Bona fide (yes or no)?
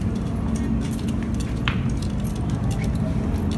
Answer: yes